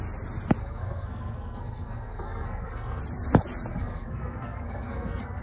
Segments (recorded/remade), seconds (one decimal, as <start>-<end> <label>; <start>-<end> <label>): 0.0-0.6 recorded; 0.6-3.0 remade; 3.0-3.7 recorded; 3.7-5.4 remade